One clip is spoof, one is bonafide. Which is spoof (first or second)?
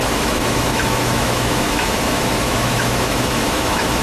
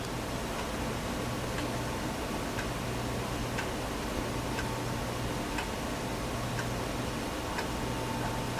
first